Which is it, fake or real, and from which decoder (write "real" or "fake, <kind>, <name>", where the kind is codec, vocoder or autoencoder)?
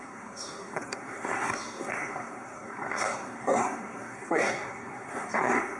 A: fake, codec, SNAC